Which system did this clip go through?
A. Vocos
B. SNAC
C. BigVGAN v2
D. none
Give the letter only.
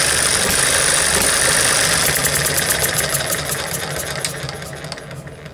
D